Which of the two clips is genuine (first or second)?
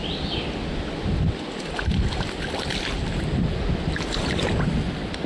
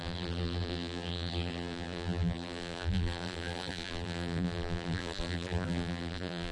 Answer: first